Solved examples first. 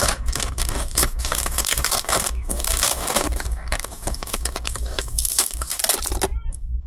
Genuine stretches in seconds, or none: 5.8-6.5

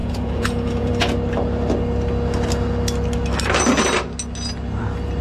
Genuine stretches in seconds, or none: 0.9-5.2

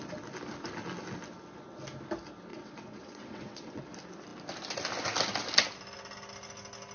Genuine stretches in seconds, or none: 0.0-2.5; 3.8-6.9

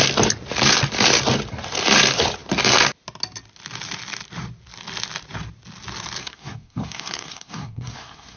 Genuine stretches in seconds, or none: 0.0-6.2

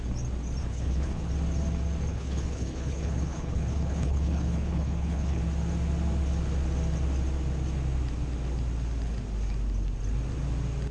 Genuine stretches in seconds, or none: 0.0-0.6; 1.3-2.1; 5.4-10.9

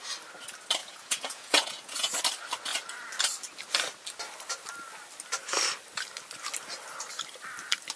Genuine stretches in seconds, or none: 0.0-0.8; 2.2-8.0

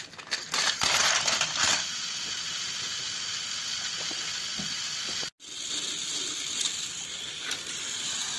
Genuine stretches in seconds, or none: 0.0-8.4

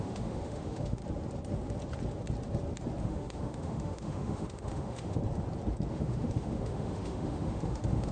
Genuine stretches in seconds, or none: 1.0-3.0; 5.2-5.9